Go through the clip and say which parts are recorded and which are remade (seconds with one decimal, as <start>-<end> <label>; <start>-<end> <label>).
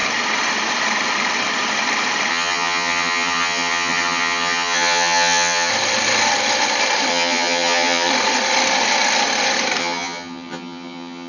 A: 0.0-2.3 recorded; 2.3-5.7 remade; 5.7-7.1 recorded; 7.1-8.1 remade; 8.1-9.8 recorded; 9.8-11.3 remade